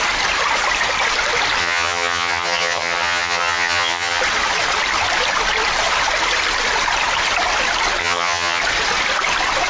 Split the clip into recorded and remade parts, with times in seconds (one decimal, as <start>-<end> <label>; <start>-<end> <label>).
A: 0.0-1.6 recorded; 1.6-4.2 remade; 4.2-8.0 recorded; 8.0-8.6 remade; 8.6-9.7 recorded